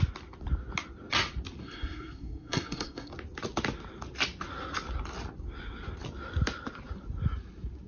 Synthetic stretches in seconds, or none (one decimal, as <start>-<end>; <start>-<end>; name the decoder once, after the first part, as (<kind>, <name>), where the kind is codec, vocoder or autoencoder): 1.6-3.1 (codec, SNAC)